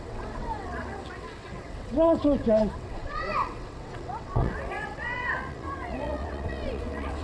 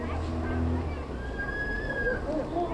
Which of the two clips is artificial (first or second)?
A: first